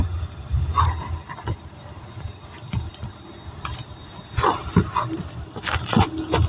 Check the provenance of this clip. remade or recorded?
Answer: recorded